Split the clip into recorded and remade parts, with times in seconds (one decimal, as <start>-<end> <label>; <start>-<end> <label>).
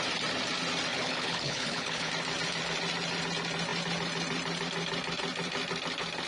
0.0-0.9 recorded; 0.9-2.1 remade; 2.1-6.3 recorded